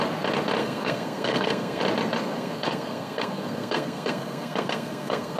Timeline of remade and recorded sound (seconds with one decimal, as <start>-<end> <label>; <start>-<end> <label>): 0.0-0.6 recorded; 0.6-1.8 remade; 1.8-2.2 recorded; 2.2-5.4 remade